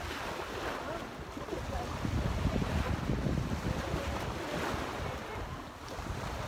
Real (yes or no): yes